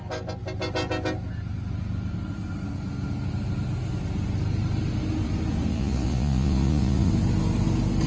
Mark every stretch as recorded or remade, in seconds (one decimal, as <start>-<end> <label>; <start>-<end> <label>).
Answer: 0.0-5.7 recorded; 5.7-7.1 remade; 7.1-8.1 recorded